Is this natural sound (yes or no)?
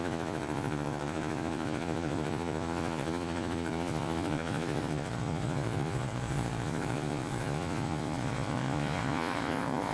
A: no